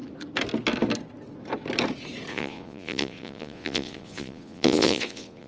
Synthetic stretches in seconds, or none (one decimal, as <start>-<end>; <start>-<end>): 2.3-5.5